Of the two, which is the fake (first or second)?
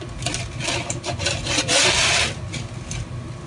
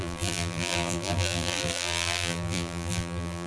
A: second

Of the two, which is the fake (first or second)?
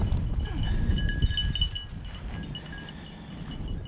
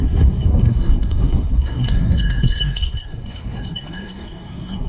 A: second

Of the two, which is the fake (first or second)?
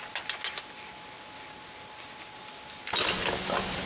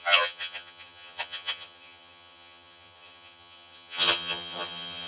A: second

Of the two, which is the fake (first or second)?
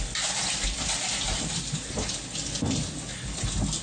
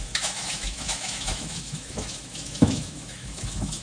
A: second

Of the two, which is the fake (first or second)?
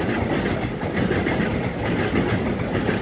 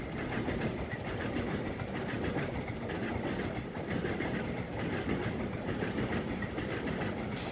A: second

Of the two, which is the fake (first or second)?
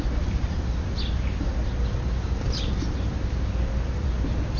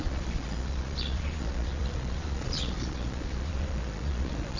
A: second